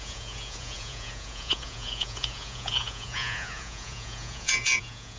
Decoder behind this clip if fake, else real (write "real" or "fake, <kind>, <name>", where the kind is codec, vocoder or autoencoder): fake, vocoder, Vocos